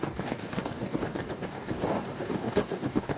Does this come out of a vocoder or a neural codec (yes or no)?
yes